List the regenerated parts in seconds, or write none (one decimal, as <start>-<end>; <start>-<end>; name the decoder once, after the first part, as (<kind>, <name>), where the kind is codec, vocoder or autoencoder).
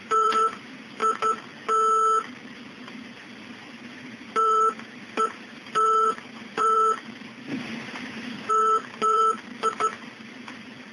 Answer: 0.0-1.0 (vocoder, BigVGAN v2); 2.9-10.9